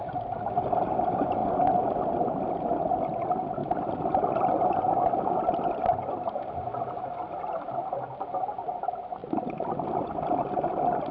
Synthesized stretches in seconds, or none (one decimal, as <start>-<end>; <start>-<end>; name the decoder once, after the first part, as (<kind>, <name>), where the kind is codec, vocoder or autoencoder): none